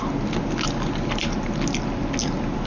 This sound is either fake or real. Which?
real